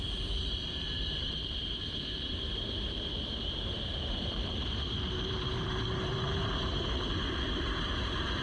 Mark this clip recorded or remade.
remade